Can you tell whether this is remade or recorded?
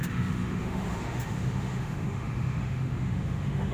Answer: remade